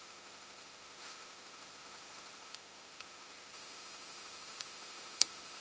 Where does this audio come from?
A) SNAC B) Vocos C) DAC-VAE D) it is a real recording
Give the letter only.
C